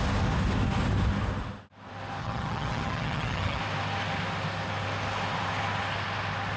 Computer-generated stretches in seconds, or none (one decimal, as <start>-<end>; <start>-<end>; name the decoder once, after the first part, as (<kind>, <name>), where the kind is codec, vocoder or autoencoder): 2.2-3.6 (vocoder, HiFi-GAN)